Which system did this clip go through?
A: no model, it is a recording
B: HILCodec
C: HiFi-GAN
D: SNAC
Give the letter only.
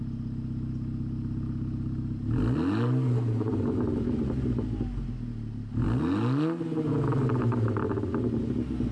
A